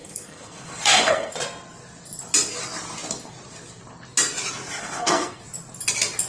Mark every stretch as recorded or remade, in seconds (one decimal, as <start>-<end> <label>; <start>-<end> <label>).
0.0-1.3 remade; 1.3-4.8 recorded; 4.8-5.4 remade; 5.4-6.3 recorded